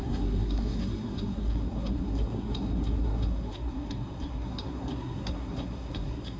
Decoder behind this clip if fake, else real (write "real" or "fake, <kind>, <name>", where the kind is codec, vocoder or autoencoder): fake, codec, SNAC